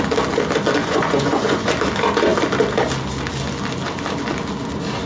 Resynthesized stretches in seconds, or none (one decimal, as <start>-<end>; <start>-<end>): 0.8-1.7